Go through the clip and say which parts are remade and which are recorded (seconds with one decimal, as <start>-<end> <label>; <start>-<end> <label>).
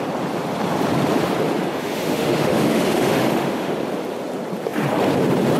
0.0-1.7 recorded; 1.7-3.7 remade; 3.7-5.6 recorded